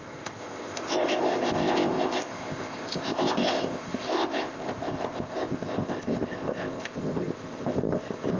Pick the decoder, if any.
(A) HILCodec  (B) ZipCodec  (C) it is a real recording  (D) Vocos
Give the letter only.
B